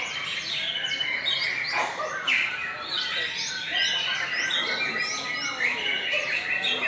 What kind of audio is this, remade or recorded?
recorded